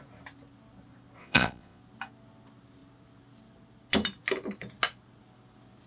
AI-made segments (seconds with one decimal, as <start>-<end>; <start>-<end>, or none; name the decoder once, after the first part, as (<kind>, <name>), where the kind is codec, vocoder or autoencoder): 1.2-1.8 (vocoder, Vocos)